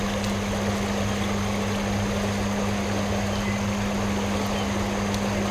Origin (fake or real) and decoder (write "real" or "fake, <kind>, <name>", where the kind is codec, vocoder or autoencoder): real